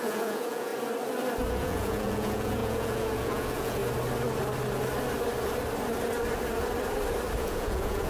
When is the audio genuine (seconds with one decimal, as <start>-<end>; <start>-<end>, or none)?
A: 0.7-1.5; 3.8-7.4